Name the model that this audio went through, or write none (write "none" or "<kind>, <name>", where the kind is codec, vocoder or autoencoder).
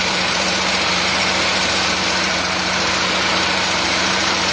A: vocoder, BigVGAN v2